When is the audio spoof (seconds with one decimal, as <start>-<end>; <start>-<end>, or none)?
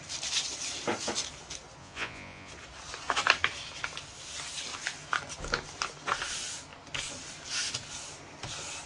1.8-2.5